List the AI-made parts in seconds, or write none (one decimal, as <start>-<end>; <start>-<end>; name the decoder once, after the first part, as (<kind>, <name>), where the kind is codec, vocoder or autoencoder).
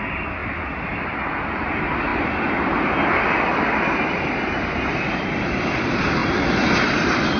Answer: 0.0-0.4 (vocoder, BigVGAN v2); 1.7-6.2; 6.8-7.4